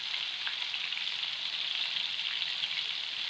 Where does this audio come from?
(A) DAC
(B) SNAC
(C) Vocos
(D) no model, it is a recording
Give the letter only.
D